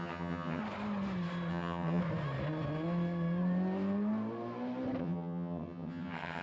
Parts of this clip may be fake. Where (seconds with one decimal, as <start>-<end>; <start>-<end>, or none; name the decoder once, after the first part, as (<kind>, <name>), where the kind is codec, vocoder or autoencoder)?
0.0-0.6 (vocoder, HiFi-GAN); 1.5-2.0; 5.0-6.4